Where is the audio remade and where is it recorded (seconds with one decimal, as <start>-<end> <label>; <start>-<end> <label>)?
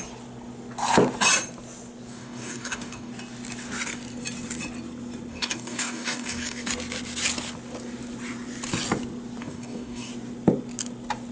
0.0-2.1 recorded; 2.1-3.1 remade; 3.1-5.3 recorded; 5.3-6.7 remade; 6.7-9.4 recorded; 9.4-10.1 remade; 10.1-11.3 recorded